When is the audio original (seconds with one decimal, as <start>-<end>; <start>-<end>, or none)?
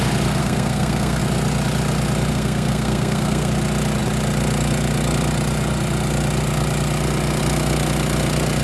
0.0-0.4; 1.2-2.3; 3.5-8.6